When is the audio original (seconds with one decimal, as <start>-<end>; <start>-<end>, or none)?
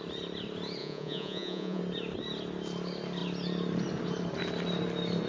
0.0-0.8; 1.8-5.3